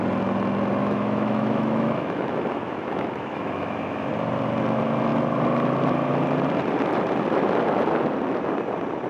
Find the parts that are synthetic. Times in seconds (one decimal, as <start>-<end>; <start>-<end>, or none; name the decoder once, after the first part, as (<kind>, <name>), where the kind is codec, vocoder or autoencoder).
0.8-4.1 (autoencoder, DAC-VAE)